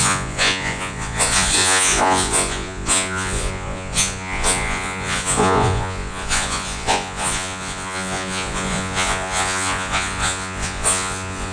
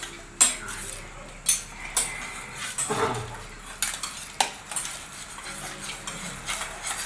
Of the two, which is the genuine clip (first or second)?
second